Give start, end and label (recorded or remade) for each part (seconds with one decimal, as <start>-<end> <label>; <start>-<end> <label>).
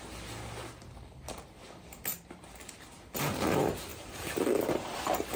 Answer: 0.0-2.1 recorded; 2.1-2.6 remade; 2.6-3.9 recorded; 3.9-5.4 remade